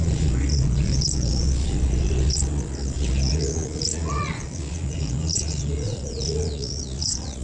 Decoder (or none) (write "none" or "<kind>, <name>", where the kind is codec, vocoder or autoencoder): vocoder, Vocos